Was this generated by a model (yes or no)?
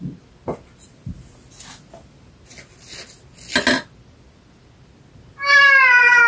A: no